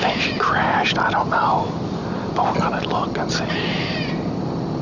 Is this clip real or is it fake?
fake